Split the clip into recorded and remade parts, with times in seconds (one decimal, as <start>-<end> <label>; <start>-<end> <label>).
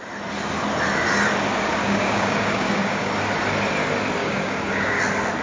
0.0-1.8 recorded; 1.8-3.1 remade; 3.1-4.2 recorded; 4.2-5.0 remade; 5.0-5.4 recorded